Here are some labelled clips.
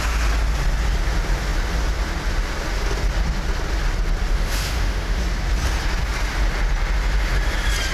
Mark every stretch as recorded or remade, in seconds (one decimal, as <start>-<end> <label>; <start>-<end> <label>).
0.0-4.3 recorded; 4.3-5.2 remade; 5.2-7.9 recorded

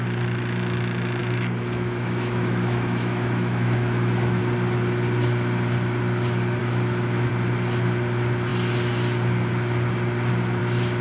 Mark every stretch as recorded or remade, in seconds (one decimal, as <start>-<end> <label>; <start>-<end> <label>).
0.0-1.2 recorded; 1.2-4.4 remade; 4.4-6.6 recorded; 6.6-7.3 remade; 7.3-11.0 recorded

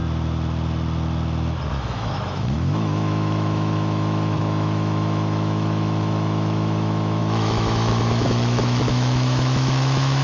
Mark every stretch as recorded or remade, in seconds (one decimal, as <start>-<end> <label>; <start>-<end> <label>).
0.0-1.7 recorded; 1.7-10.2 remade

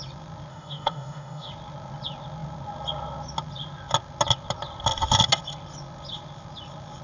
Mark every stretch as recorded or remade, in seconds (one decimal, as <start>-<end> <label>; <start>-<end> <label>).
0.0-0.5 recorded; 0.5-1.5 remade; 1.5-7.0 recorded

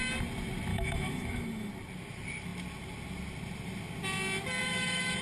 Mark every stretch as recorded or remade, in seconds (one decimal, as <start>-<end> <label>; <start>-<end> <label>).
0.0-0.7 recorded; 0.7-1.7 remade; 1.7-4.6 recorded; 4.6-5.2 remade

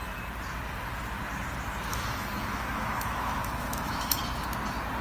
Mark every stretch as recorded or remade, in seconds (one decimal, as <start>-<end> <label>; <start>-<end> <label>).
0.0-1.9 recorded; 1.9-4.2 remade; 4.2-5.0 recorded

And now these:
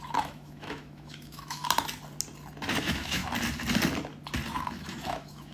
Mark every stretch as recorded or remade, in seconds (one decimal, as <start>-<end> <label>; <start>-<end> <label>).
0.0-1.6 remade; 1.6-2.8 recorded; 2.8-3.2 remade; 3.2-4.7 recorded; 4.7-5.5 remade